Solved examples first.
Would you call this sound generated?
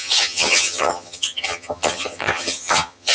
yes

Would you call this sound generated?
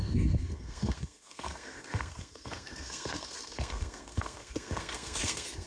yes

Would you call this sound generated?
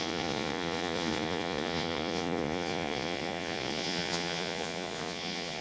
yes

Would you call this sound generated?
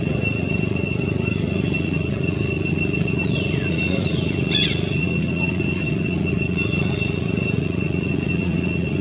yes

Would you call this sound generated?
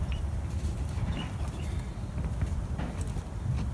no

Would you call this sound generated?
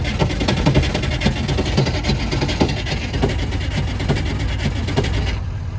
no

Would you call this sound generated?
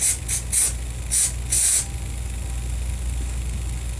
no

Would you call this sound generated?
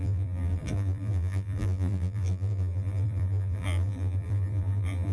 yes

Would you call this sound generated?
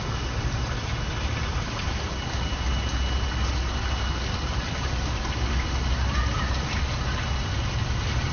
no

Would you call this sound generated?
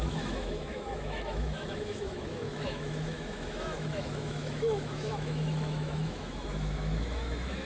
yes